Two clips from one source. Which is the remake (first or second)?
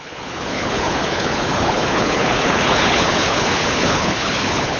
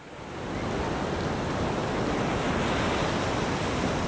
first